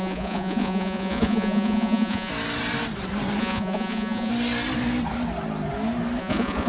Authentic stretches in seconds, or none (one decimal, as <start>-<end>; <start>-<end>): 2.3-3.4; 4.3-6.2